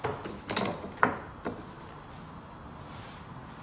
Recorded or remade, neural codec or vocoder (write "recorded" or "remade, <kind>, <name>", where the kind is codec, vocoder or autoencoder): recorded